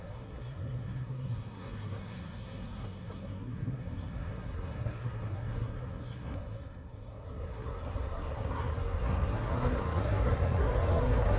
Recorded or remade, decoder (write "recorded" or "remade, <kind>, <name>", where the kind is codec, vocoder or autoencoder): remade, codec, SNAC